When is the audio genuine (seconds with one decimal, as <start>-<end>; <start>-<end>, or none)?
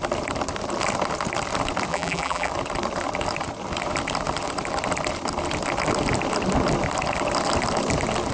0.0-1.9; 2.5-8.3